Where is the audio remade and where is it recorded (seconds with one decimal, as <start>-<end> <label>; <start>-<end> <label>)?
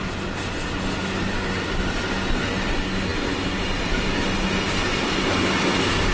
0.0-6.1 recorded